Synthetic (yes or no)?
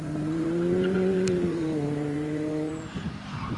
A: yes